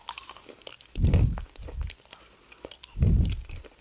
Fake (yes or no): no